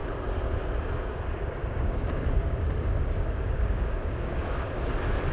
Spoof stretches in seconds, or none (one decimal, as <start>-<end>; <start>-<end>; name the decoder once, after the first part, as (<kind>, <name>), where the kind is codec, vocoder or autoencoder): 1.6-4.8 (codec, DAC)